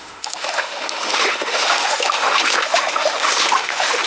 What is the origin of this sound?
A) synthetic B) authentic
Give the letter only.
A